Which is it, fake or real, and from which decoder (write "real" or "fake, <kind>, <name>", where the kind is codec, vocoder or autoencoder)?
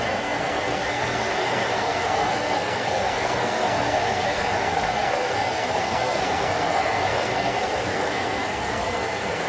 fake, codec, SNAC